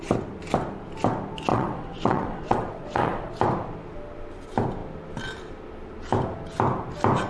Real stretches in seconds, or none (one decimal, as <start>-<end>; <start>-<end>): 0.0-1.5; 3.3-7.3